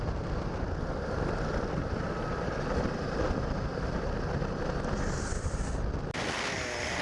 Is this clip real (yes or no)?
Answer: yes